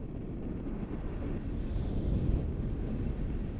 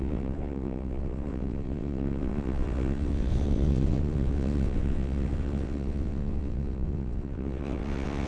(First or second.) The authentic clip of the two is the first